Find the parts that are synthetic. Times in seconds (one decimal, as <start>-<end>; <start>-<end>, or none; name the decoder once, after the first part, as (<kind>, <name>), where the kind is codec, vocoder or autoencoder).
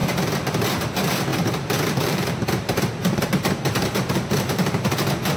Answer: 0.0-0.6 (vocoder, BigVGAN v2); 1.3-2.3; 3.0-4.9